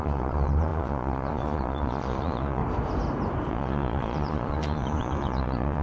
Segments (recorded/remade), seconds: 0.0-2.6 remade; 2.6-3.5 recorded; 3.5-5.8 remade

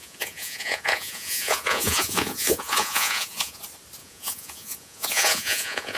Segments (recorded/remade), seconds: 0.0-3.6 remade; 3.6-4.0 recorded; 4.0-6.0 remade

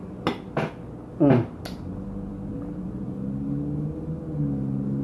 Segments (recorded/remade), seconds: 0.0-5.0 recorded